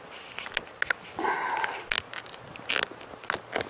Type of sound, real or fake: real